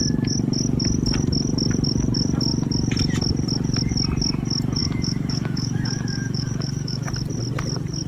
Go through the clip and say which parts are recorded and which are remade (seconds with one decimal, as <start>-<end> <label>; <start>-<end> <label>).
0.0-4.8 recorded; 4.8-7.1 remade; 7.1-8.1 recorded